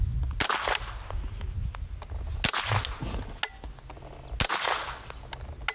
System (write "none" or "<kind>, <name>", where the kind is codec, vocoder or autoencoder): none